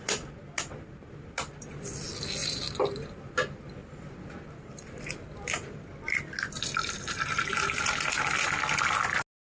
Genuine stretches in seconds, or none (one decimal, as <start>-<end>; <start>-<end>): 0.0-2.4; 3.3-3.8; 5.9-6.8; 7.8-9.5